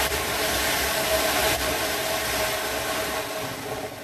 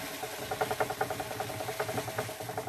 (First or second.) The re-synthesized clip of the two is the first